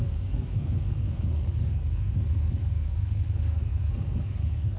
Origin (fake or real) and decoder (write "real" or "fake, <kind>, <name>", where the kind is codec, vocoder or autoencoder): fake, codec, SNAC